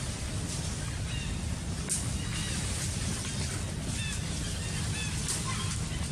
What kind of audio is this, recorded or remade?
recorded